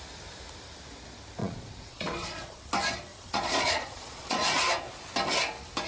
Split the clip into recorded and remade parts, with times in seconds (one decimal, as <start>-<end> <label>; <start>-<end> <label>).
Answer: 0.0-1.4 recorded; 1.4-2.6 remade; 2.6-3.1 recorded; 3.1-4.5 remade; 4.5-5.9 recorded